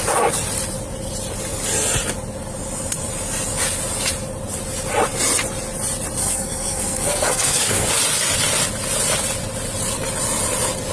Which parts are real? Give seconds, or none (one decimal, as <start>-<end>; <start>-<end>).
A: 0.0-6.2; 7.9-10.9